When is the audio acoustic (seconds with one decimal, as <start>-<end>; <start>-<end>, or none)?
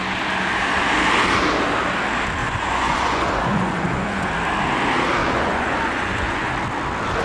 0.0-2.4; 4.3-5.2; 6.5-7.2